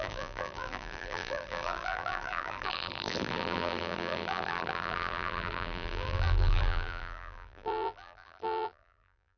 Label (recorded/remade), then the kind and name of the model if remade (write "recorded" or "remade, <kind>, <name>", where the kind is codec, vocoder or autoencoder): remade, vocoder, BigVGAN v2